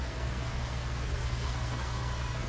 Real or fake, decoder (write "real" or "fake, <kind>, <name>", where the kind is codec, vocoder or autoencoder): fake, codec, SNAC